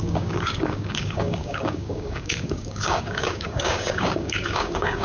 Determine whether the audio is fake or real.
fake